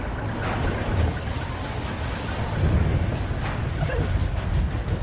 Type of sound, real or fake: real